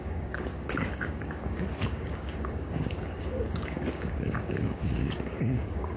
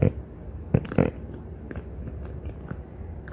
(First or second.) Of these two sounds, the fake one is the first